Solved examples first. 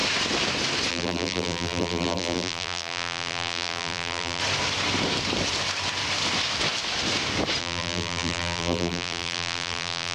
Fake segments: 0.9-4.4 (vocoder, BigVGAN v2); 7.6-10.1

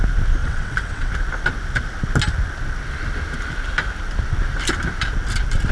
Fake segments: 0.4-1.1 (vocoder, WaveNeXt)

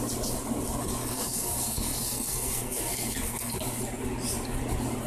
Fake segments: 1.0-3.5 (codec, SNAC)

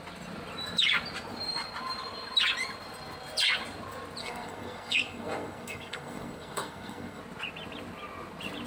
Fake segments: 4.2-7.2 (codec, SNAC)

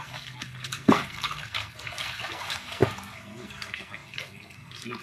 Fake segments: 0.0-5.0 (codec, SNAC)

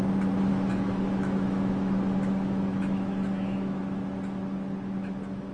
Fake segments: 0.5-3.8 (autoencoder, DAC-VAE)

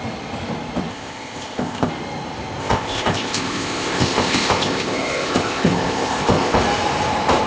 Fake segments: 0.9-1.9 (codec, ZipCodec); 2.6-6.6